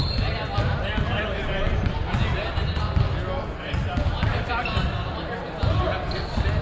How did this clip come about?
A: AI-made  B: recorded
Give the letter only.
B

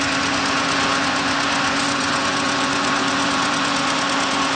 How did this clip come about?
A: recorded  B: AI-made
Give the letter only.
B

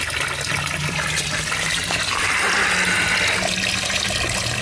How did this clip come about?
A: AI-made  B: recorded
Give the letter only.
B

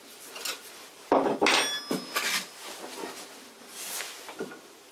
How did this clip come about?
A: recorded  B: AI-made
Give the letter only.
A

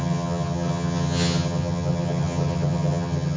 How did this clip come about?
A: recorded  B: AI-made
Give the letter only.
B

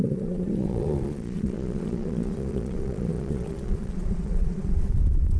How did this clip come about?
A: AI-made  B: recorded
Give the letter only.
A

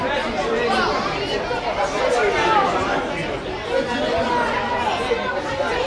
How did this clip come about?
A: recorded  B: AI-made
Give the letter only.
A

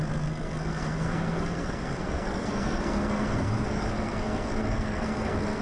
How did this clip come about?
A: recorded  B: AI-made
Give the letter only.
B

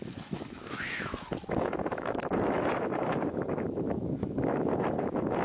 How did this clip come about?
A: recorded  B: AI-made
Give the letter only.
B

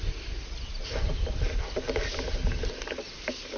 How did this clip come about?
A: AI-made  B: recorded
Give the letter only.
B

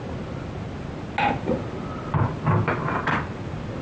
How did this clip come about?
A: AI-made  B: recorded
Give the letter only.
B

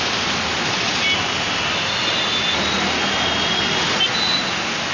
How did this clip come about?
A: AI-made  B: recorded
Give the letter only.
B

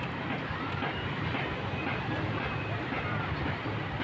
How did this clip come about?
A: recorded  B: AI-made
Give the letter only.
A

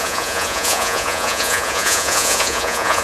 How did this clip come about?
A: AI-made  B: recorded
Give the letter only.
A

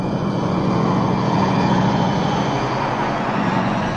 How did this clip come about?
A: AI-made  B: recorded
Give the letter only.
A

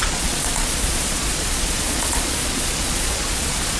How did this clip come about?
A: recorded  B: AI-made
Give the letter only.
B